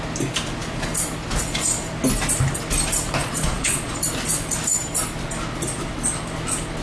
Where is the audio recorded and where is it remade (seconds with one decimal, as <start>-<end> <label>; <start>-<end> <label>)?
0.0-3.2 recorded; 3.2-4.0 remade; 4.0-6.8 recorded